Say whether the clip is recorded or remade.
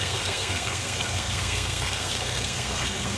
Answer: remade